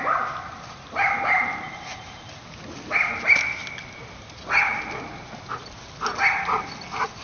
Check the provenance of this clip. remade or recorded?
recorded